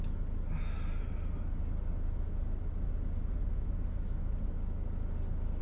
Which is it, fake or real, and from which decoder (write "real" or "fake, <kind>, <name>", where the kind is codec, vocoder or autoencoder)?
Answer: real